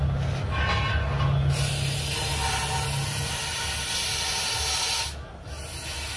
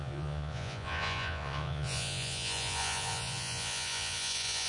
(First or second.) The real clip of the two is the first